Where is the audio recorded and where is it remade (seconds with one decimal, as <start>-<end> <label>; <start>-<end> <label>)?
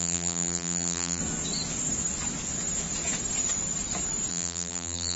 0.0-1.2 remade; 1.2-4.3 recorded; 4.3-5.2 remade